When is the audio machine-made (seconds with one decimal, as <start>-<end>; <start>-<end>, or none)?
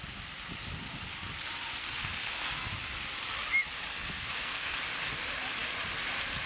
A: 1.8-2.7; 3.9-4.8